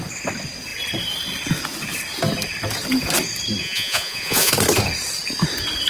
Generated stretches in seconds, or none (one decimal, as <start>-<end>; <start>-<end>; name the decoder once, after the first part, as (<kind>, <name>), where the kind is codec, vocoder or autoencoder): 3.6-4.5 (vocoder, Vocos)

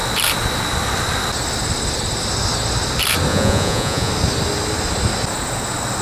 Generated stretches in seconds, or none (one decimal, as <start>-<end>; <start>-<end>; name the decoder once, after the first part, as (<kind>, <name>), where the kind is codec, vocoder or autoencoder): 3.3-4.1 (vocoder, Vocos)

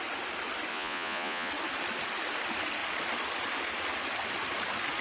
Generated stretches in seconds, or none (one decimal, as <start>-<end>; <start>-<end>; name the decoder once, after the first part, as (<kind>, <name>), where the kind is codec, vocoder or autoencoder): 0.7-1.5 (vocoder, Vocos)

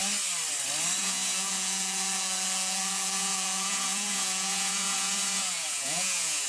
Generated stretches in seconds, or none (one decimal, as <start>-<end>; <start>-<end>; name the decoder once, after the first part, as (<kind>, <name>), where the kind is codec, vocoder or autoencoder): 1.0-6.5 (vocoder, Vocos)

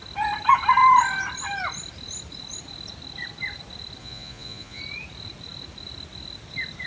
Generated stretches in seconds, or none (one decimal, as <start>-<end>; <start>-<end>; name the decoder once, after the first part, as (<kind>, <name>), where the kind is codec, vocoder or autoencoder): 4.0-4.8 (vocoder, Vocos)

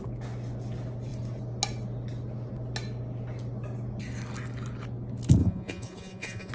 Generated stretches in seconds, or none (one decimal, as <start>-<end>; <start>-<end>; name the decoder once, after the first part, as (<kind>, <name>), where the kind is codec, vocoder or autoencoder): 5.4-6.5 (vocoder, Vocos)

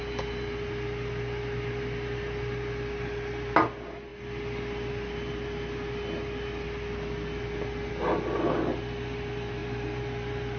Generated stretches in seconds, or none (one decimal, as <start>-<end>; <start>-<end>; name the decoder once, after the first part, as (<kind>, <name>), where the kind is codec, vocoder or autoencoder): none